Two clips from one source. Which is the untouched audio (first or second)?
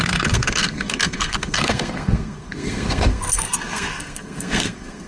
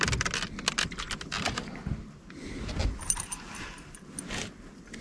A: second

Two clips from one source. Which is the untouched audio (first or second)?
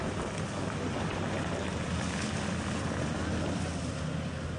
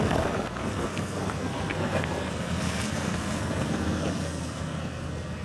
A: first